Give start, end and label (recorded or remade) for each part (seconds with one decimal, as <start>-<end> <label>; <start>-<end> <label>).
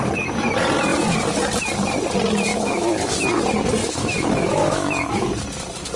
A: 0.0-2.5 recorded; 2.5-3.1 remade; 3.1-3.8 recorded; 3.8-5.3 remade; 5.3-6.0 recorded